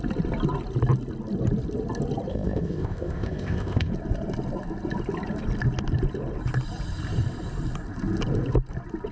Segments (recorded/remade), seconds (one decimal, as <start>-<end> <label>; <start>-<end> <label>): 0.0-2.3 recorded; 2.3-3.9 remade; 3.9-9.1 recorded